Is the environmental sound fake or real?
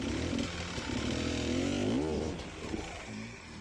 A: real